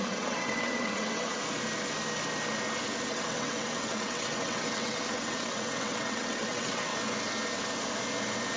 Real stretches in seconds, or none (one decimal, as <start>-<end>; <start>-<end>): 1.3-3.1; 6.9-8.6